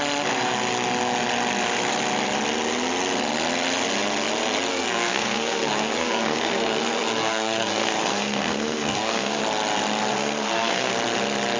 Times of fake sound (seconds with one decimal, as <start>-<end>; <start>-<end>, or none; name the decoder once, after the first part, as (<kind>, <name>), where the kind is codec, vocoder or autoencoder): 4.7-9.4 (codec, SNAC); 10.1-10.9